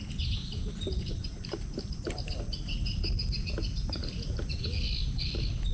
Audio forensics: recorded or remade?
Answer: recorded